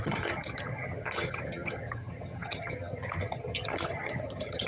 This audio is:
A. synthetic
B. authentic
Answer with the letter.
A